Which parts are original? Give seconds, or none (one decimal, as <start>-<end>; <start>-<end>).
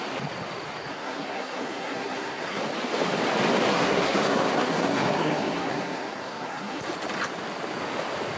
0.0-0.9; 2.6-3.7; 6.8-8.4